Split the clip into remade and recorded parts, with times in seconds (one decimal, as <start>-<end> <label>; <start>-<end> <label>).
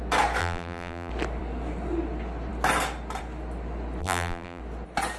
0.0-0.4 recorded; 0.4-1.1 remade; 1.1-4.0 recorded; 4.0-4.6 remade; 4.6-5.2 recorded